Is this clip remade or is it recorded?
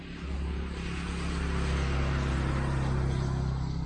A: recorded